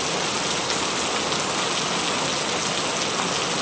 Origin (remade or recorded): recorded